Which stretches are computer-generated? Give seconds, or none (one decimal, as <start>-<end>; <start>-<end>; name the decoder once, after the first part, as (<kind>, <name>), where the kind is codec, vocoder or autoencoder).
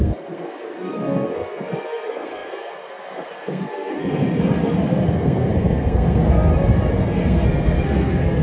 0.0-6.5 (codec, SNAC); 7.0-8.4